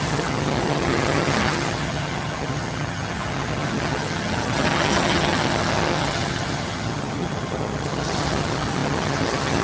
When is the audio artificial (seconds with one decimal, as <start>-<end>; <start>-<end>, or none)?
0.0-9.6

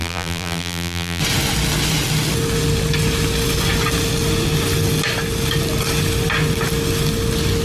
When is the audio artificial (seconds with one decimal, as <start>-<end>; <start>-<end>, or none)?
0.0-1.2

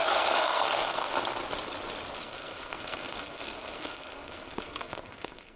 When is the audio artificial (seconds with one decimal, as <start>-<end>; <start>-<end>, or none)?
0.0-1.1; 2.2-5.6